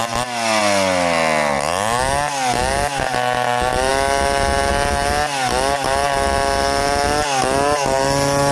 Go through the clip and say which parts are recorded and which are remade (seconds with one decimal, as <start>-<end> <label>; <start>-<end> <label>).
0.0-8.5 recorded